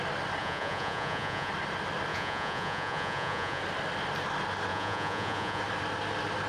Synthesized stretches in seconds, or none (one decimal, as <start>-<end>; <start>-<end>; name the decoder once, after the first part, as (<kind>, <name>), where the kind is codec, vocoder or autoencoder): 0.4-1.5 (vocoder, Vocos); 2.1-3.6; 4.7-5.6